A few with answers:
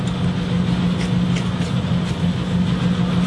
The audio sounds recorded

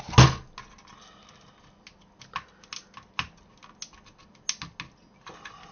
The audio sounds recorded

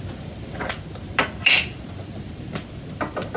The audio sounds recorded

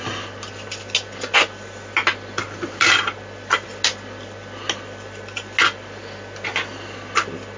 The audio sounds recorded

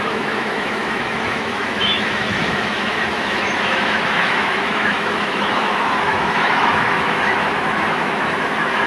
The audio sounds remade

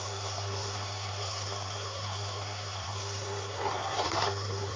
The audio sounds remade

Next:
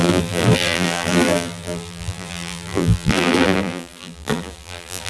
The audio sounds remade